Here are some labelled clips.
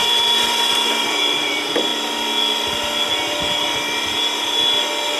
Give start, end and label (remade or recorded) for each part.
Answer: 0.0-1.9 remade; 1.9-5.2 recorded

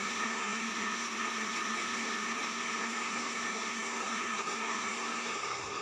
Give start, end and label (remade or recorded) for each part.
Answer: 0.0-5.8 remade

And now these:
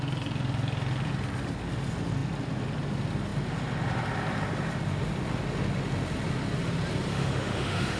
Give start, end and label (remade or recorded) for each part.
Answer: 0.0-7.1 recorded; 7.1-8.0 remade

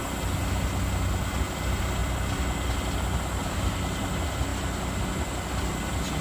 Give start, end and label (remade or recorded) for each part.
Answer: 0.0-3.4 recorded; 3.4-4.1 remade; 4.1-6.2 recorded

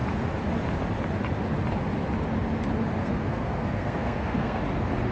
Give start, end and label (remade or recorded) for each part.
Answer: 0.0-3.0 recorded; 3.0-4.6 remade; 4.6-5.1 recorded